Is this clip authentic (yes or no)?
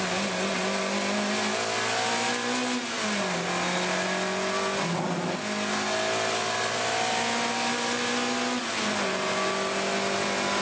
yes